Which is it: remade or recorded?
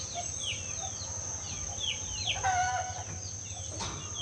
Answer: recorded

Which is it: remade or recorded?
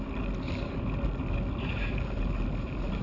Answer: recorded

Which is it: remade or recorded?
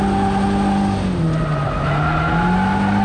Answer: recorded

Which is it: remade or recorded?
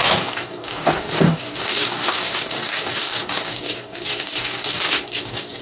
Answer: remade